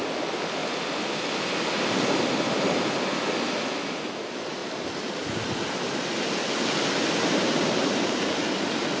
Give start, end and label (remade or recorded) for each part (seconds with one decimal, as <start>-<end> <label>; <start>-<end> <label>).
0.0-9.0 recorded